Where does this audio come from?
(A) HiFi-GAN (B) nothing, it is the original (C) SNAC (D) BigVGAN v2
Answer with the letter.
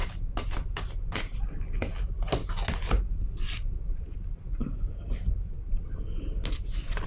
B